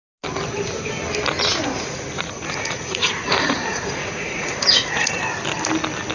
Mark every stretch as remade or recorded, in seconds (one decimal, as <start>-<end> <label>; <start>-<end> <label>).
0.0-1.5 recorded; 1.5-5.2 remade; 5.2-6.1 recorded

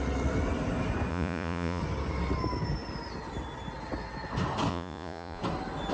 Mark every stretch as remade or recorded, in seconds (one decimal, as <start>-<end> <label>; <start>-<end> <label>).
0.0-1.1 recorded; 1.1-1.8 remade; 1.8-4.7 recorded; 4.7-5.4 remade; 5.4-5.9 recorded

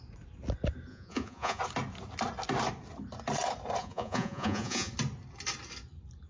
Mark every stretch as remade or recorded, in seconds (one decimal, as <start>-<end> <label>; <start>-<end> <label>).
0.0-0.9 recorded; 0.9-1.6 remade; 1.6-3.8 recorded; 3.8-4.9 remade; 4.9-6.3 recorded

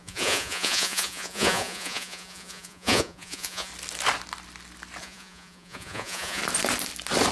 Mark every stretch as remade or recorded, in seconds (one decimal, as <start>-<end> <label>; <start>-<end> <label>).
0.0-3.7 remade; 3.7-5.0 recorded; 5.0-6.4 remade; 6.4-7.3 recorded

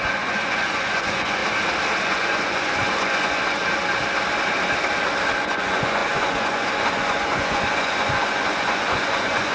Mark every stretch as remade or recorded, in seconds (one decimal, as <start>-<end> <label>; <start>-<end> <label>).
0.0-1.4 remade; 1.4-2.0 recorded; 2.0-3.6 remade; 3.6-5.4 recorded; 5.4-9.5 remade

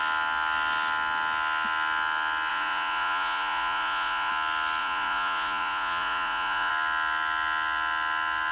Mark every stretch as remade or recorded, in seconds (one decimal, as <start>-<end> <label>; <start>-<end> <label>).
0.0-2.5 recorded; 2.5-4.3 remade; 4.3-4.8 recorded; 4.8-6.7 remade; 6.7-8.5 recorded